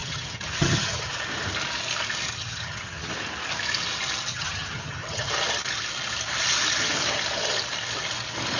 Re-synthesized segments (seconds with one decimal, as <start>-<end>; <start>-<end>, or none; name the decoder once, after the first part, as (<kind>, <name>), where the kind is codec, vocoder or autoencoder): 0.0-1.1 (vocoder, HiFi-GAN); 2.3-3.1; 4.3-5.3